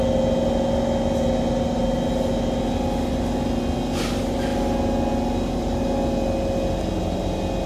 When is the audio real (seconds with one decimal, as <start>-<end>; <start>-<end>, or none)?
0.0-7.7